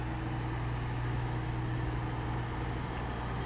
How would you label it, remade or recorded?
recorded